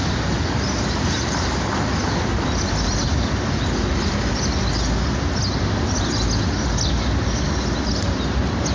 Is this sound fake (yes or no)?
no